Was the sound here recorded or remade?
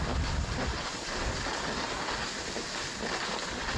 recorded